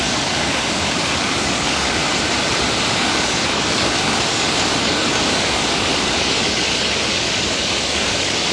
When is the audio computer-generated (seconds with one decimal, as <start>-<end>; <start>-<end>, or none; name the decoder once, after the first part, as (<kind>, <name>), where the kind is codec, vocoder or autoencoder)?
0.0-2.0 (codec, DAC); 2.9-8.5